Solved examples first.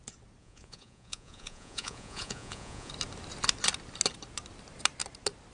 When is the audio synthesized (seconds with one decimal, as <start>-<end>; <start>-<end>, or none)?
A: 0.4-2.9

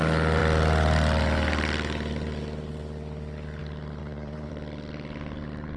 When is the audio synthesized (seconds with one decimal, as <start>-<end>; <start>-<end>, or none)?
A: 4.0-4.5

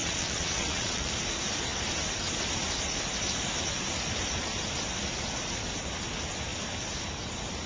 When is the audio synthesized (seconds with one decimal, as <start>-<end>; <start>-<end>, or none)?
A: 0.0-1.1

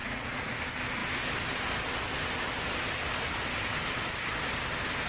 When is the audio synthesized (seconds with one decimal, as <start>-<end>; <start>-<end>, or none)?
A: 0.0-0.5

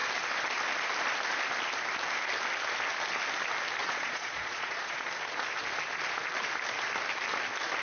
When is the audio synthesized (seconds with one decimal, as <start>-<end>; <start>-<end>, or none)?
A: 3.8-5.1